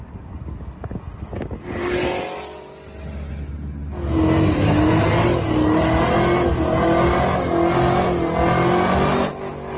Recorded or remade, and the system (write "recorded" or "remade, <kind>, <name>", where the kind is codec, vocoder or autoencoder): recorded